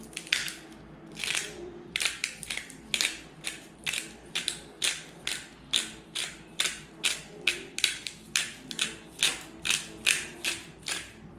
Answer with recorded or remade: remade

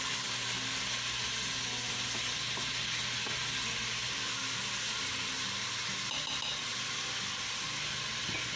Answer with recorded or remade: recorded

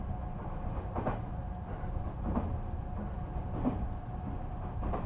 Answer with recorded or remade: recorded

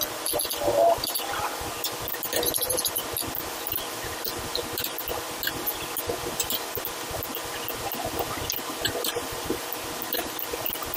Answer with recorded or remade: recorded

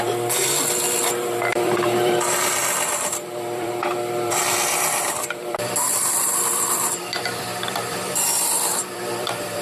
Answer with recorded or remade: remade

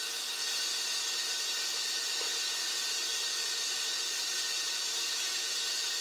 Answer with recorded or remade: recorded